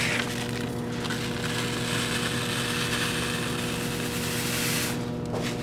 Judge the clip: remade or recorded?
recorded